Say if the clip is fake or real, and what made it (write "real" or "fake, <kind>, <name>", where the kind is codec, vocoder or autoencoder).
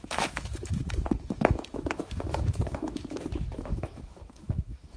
fake, autoencoder, DAC-VAE